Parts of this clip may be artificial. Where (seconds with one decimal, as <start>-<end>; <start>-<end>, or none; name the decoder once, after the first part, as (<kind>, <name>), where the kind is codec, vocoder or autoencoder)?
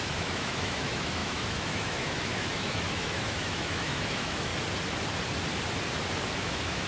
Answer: 0.0-4.5 (autoencoder, DAC-VAE); 6.4-6.9